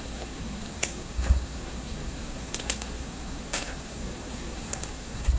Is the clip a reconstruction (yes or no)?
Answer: yes